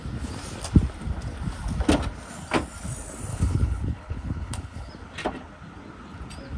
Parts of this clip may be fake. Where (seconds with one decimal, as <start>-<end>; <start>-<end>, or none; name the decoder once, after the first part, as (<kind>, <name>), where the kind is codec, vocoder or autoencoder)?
3.3-4.9 (codec, HILCodec)